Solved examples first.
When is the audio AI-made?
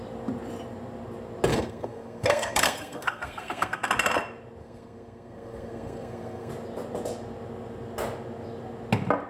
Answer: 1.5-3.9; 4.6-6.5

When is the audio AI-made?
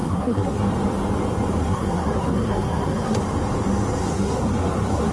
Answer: 0.0-0.6; 1.6-3.2; 4.0-5.1